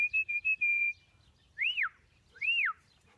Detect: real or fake real